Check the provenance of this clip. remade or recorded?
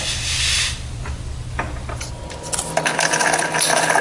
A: recorded